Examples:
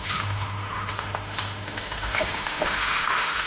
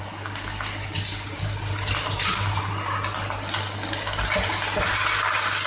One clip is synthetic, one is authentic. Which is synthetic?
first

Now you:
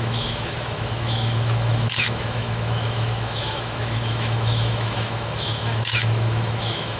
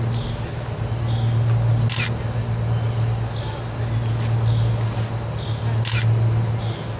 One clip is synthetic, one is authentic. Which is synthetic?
first